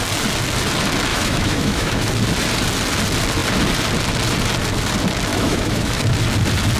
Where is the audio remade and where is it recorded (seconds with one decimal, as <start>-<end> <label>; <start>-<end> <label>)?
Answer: 0.0-1.1 recorded; 1.1-2.1 remade; 2.1-5.3 recorded; 5.3-6.0 remade; 6.0-6.8 recorded